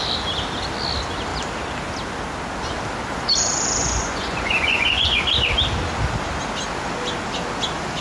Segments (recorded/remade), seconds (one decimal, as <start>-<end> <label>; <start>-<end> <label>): 0.0-3.8 recorded; 3.8-5.2 remade; 5.2-8.0 recorded